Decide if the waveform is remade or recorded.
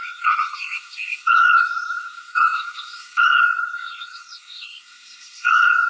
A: remade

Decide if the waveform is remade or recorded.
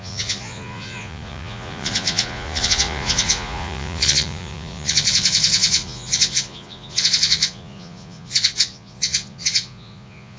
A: remade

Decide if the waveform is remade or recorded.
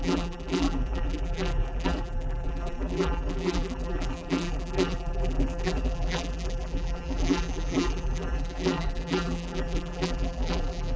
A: remade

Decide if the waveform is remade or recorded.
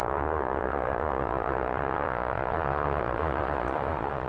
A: remade